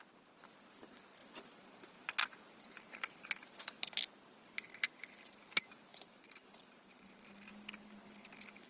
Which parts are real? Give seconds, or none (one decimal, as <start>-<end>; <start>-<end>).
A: 0.0-1.2; 3.3-5.9; 7.5-8.7